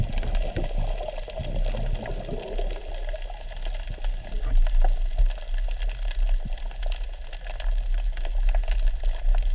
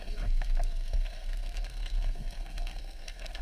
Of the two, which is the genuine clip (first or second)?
first